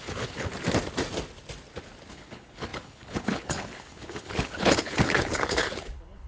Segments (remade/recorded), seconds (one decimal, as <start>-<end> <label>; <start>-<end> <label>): 0.0-0.5 remade; 0.5-2.1 recorded; 2.1-6.3 remade